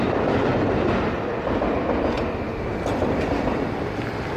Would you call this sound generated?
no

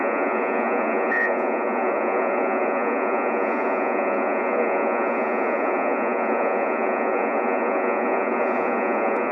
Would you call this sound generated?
yes